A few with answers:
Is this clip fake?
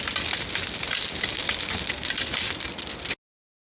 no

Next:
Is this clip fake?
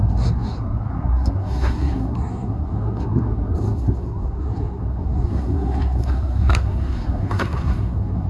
yes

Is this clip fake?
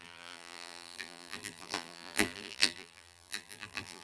yes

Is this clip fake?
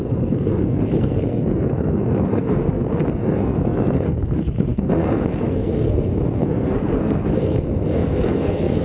yes